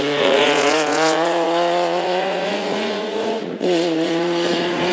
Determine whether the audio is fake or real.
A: fake